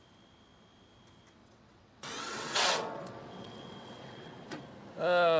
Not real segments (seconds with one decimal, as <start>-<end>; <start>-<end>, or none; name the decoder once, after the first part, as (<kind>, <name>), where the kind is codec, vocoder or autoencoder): 1.4-4.6 (vocoder, WaveNeXt)